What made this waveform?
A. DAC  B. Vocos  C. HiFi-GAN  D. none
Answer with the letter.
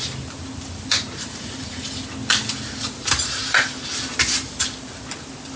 D